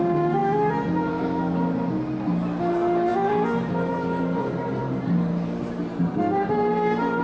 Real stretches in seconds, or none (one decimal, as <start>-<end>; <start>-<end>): 0.0-4.8; 6.7-7.2